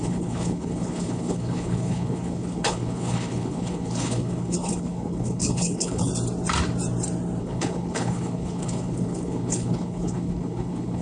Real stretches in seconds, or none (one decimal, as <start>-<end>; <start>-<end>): 6.1-7.4